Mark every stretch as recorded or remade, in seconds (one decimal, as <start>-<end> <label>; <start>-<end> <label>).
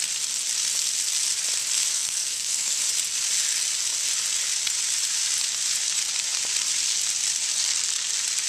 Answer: 0.0-1.9 recorded; 1.9-2.8 remade; 2.8-8.5 recorded